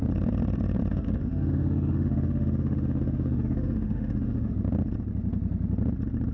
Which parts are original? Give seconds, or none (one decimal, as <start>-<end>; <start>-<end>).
0.0-0.9; 4.5-6.3